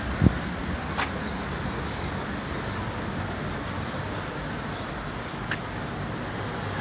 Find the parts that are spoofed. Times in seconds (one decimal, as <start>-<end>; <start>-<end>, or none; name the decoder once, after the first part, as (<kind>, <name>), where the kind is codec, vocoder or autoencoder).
none